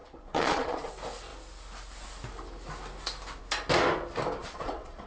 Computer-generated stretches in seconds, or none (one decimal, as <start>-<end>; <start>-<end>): 0.0-0.9; 4.4-5.1